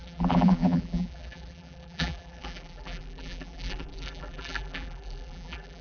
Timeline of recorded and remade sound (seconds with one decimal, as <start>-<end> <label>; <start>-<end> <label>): 0.0-5.8 remade